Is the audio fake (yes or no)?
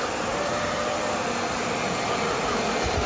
no